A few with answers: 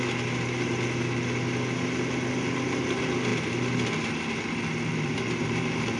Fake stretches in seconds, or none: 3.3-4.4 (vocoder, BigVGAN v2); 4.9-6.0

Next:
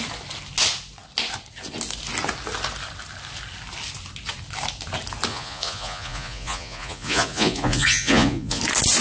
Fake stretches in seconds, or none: 5.3-8.6 (vocoder, Vocos)

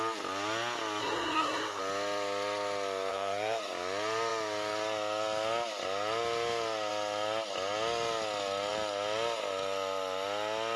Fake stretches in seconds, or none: 1.0-1.8 (codec, SNAC); 3.1-3.6